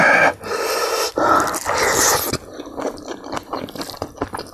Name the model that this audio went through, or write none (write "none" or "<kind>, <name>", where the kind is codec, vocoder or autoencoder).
none